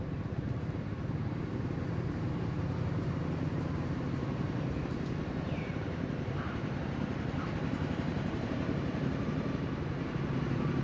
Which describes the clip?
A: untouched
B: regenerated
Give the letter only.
B